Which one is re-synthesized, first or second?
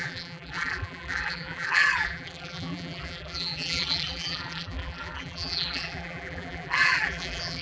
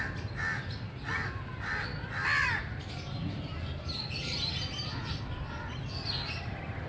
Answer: first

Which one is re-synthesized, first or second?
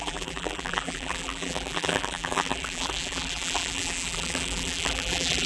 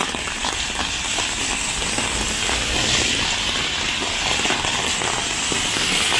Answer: first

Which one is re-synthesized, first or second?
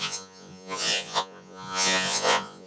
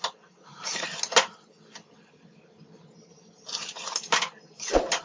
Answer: first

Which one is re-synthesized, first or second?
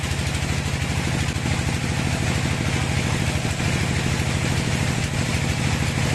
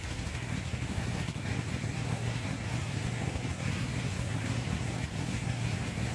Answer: second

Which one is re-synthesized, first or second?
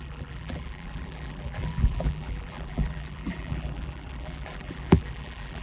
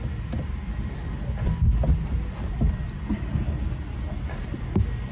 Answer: first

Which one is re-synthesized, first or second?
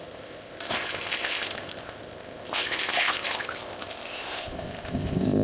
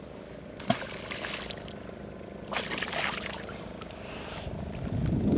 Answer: first